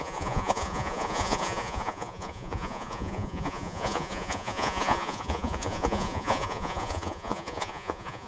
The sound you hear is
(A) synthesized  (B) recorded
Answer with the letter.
A